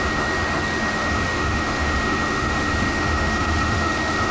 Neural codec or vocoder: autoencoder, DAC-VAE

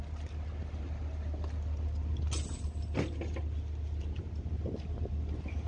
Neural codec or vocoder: none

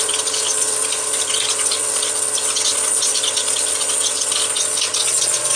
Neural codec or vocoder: vocoder, Vocos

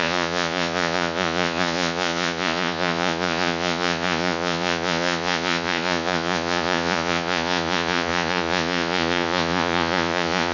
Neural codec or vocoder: vocoder, Vocos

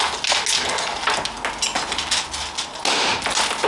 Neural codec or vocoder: none